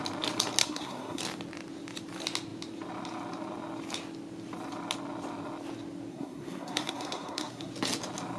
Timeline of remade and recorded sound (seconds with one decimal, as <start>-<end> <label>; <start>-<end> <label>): 0.0-0.6 recorded; 0.6-1.2 remade; 1.2-6.1 recorded; 6.1-7.7 remade; 7.7-8.4 recorded